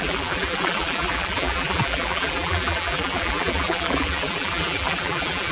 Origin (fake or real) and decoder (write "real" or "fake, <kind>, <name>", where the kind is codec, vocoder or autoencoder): fake, vocoder, BigVGAN v2